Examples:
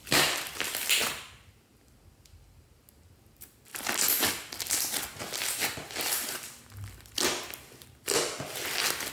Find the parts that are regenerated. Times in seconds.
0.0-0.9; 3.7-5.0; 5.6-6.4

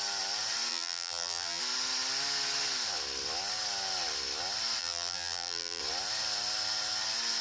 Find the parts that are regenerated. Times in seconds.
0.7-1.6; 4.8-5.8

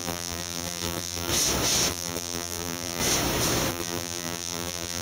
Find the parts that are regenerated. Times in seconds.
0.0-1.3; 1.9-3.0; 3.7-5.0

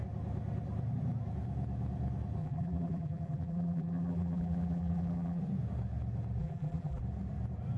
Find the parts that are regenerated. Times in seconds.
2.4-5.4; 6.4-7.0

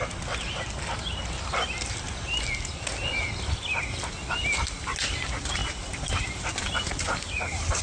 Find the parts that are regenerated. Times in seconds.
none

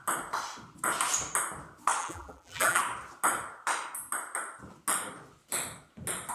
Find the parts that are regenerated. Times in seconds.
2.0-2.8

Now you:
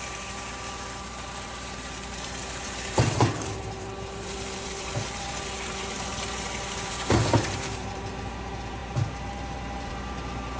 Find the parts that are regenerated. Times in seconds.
0.0-10.6

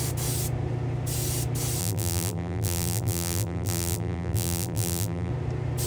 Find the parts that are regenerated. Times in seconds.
1.8-5.3